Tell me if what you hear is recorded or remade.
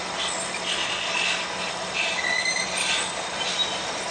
recorded